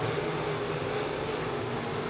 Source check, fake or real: real